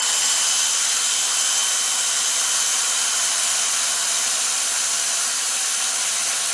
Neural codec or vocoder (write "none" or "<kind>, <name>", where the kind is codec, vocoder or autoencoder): none